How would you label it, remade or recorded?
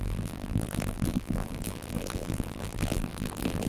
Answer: remade